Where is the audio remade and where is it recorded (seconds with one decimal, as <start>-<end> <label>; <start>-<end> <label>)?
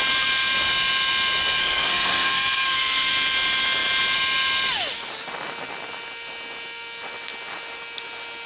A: 0.0-1.6 recorded; 1.6-3.1 remade; 3.1-8.5 recorded